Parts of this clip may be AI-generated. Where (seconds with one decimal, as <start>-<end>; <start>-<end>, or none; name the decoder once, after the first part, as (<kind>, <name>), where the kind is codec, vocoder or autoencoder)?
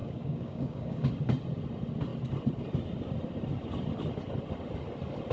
0.0-1.1 (codec, DAC)